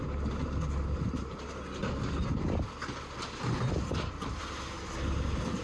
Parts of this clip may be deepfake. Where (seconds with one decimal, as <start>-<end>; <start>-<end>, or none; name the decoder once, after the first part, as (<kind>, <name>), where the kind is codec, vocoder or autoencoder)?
none

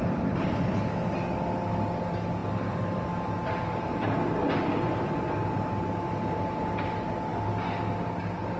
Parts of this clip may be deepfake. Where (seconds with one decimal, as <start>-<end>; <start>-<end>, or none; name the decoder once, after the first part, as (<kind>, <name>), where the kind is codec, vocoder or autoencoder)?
none

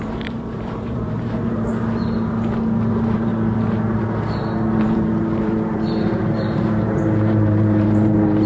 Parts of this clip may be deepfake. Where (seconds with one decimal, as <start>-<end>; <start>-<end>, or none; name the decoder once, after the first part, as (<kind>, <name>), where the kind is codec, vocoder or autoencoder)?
0.0-1.7 (vocoder, BigVGAN v2); 2.9-3.3; 4.8-8.5

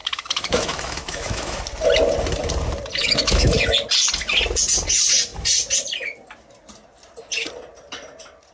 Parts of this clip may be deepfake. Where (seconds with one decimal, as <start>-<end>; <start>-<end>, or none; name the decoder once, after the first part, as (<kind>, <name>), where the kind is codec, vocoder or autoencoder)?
0.0-1.6 (autoencoder, DAC-VAE); 3.0-3.5

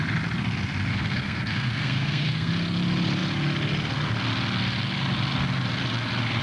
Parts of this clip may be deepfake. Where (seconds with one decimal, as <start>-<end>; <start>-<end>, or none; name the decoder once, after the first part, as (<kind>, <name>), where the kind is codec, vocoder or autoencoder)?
0.9-2.5 (codec, SNAC)